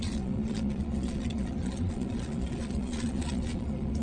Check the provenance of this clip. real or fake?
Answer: fake